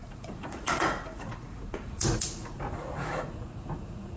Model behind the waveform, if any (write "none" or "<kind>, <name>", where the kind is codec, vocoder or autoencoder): vocoder, Vocos